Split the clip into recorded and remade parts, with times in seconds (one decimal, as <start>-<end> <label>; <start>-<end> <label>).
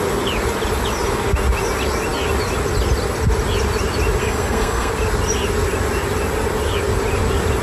0.0-4.2 recorded; 4.2-4.9 remade; 4.9-7.6 recorded